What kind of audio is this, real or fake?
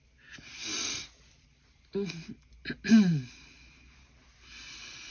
real